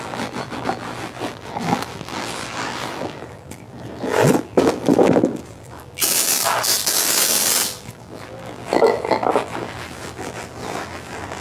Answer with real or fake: fake